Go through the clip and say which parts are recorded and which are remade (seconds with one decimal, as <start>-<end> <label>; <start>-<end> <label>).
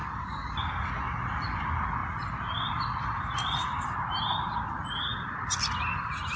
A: 0.0-6.4 recorded